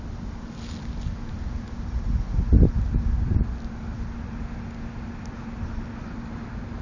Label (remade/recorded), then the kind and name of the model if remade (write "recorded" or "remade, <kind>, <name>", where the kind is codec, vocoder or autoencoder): recorded